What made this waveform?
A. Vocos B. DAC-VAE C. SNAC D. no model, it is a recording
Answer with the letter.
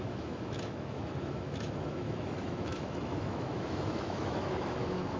B